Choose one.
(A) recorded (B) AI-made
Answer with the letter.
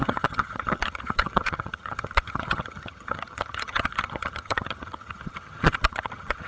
B